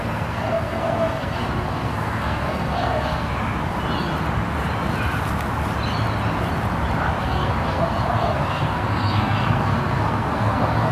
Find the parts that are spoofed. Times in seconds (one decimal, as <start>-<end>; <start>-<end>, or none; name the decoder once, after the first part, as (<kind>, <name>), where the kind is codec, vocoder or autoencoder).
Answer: 0.0-3.3 (codec, SNAC); 7.2-10.9